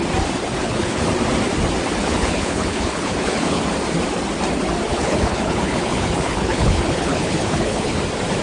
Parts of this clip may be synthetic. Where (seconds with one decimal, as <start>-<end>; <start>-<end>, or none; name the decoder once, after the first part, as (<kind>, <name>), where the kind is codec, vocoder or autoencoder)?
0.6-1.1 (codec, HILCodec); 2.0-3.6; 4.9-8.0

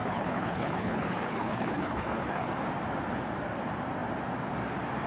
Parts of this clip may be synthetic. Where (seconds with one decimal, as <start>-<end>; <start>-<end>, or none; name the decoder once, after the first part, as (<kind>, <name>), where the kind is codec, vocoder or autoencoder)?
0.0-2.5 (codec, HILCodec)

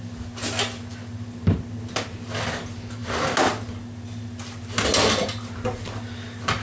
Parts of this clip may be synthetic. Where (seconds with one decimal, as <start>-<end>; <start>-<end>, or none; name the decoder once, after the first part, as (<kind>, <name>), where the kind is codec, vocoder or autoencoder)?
none

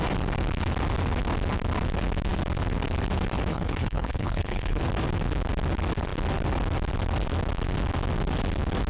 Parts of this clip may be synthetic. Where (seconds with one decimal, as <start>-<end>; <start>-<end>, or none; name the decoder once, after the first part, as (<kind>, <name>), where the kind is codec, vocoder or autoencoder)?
3.5-4.8 (codec, HILCodec)

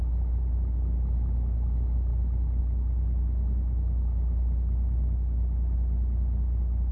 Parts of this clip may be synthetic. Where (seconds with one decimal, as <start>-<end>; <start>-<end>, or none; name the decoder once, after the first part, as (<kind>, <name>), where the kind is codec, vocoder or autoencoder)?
none